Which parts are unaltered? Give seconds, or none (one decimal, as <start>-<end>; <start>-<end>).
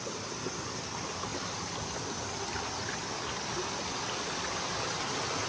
0.0-1.3; 2.2-5.5